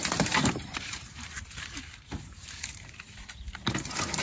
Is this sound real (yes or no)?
no